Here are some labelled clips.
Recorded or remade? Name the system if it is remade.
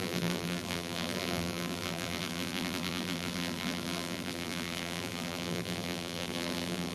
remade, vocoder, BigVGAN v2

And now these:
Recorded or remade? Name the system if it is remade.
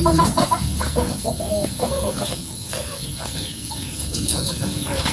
remade, codec, SNAC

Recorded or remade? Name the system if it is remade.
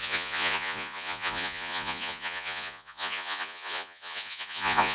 remade, vocoder, Vocos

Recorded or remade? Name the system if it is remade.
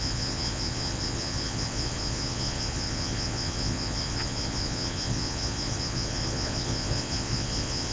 remade, vocoder, Vocos